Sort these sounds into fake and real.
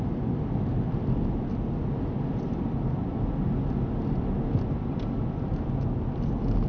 real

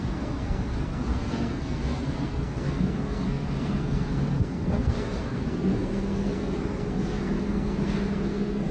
fake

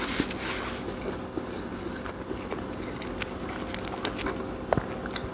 real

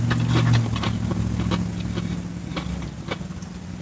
real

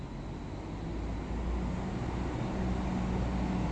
real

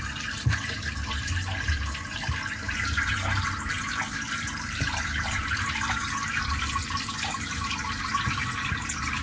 fake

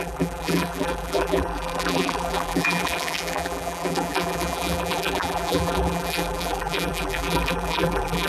fake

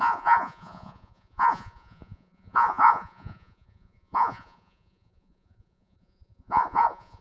fake